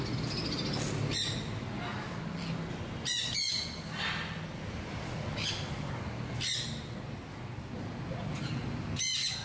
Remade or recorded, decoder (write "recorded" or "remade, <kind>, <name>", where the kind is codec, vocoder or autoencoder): recorded